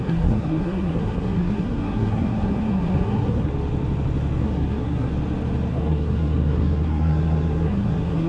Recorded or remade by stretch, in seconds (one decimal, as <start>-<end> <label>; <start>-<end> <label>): 0.0-3.5 remade; 3.5-4.4 recorded; 4.4-5.1 remade; 5.1-5.7 recorded; 5.7-8.3 remade